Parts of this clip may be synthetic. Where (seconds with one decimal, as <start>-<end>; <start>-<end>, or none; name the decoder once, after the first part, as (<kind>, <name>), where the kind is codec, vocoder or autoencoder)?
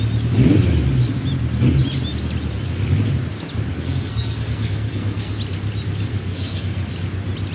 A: 3.7-5.3 (codec, SNAC); 6.1-6.9